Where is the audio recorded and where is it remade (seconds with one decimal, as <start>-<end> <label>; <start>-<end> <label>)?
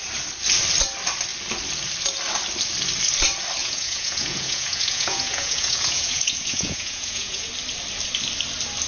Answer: 0.0-3.6 recorded; 3.6-7.5 remade; 7.5-8.9 recorded